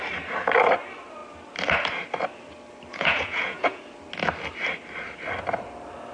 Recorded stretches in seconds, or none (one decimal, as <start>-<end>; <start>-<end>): 0.0-2.9; 3.8-6.1